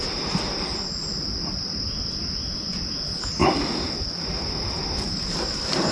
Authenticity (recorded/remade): recorded